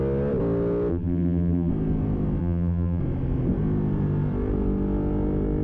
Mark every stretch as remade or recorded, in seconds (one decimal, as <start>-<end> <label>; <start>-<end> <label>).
0.0-0.9 recorded; 0.9-1.7 remade; 1.7-2.4 recorded; 2.4-3.0 remade; 3.0-5.6 recorded